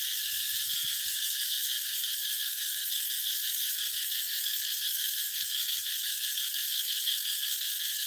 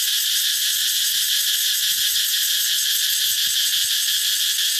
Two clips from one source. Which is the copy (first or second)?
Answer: first